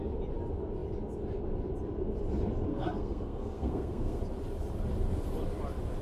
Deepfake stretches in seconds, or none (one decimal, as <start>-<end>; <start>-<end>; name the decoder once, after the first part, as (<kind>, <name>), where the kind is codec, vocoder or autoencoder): 2.7-4.2 (codec, SNAC)